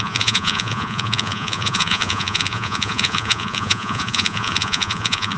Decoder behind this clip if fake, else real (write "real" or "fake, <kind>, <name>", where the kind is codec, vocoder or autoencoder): fake, vocoder, Vocos